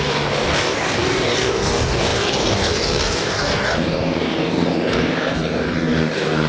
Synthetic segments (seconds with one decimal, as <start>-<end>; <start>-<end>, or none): 0.0-6.5